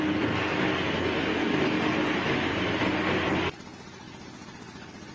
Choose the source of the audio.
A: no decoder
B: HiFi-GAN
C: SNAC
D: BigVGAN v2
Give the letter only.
A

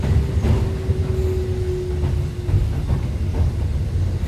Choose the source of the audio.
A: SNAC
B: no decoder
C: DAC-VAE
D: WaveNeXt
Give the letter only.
B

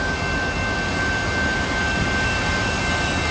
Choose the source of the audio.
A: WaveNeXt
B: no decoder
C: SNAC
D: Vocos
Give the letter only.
B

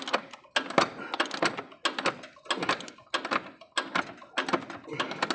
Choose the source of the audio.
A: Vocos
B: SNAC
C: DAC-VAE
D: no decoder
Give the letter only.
D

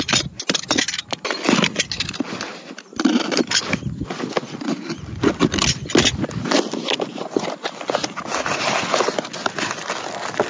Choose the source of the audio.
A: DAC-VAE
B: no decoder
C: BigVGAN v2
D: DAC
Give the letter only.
B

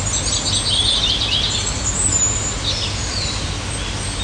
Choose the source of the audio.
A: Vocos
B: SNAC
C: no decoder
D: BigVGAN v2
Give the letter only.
C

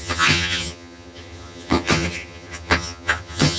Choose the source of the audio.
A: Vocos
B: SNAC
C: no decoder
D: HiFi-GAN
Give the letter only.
D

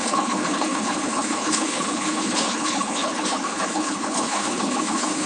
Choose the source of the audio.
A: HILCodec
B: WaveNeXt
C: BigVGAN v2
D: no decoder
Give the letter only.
A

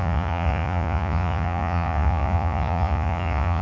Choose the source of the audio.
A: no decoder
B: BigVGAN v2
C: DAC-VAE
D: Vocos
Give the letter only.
D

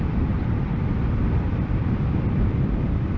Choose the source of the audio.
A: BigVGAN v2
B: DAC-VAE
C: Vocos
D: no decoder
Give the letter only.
A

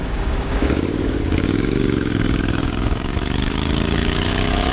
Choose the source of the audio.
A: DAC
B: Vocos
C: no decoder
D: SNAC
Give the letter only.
A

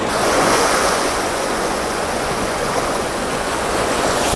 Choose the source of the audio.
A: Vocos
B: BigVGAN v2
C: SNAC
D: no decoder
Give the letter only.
A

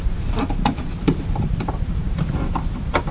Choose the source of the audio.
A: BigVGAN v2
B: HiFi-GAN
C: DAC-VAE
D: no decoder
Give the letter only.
A